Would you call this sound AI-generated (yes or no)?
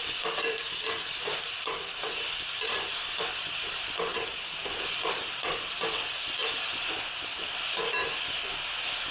yes